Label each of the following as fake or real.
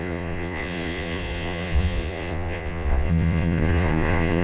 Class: fake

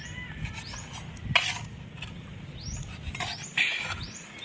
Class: real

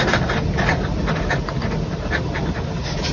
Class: real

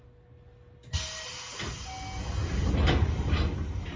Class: real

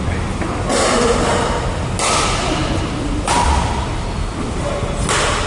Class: real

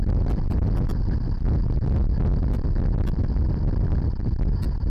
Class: real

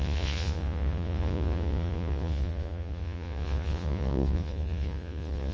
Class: fake